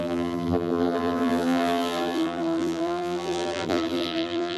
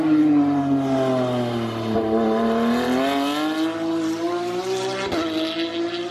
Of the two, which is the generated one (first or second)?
first